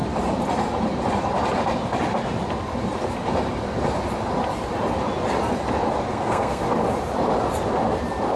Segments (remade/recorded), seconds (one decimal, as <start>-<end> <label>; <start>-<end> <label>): 0.0-6.1 recorded; 6.1-6.6 remade; 6.6-8.4 recorded